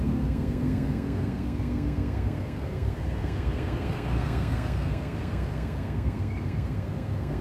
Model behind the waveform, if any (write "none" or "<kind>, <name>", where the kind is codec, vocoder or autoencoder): codec, SNAC